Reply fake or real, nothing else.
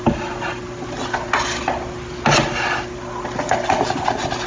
real